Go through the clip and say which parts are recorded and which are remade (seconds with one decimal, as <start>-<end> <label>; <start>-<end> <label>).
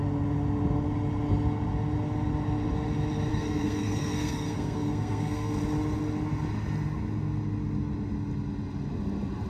0.0-3.3 recorded; 3.3-5.6 remade; 5.6-9.5 recorded